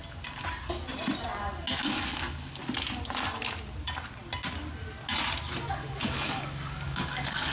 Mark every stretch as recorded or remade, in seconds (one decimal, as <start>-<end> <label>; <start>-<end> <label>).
0.0-1.8 recorded; 1.8-2.6 remade; 2.6-5.7 recorded; 5.7-7.5 remade